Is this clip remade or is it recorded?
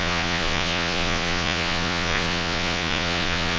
remade